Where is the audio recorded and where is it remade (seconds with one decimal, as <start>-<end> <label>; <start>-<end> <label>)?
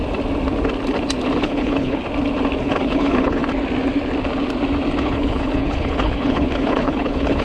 0.0-1.4 recorded; 1.4-2.0 remade; 2.0-2.6 recorded; 2.6-3.4 remade; 3.4-5.0 recorded; 5.0-7.4 remade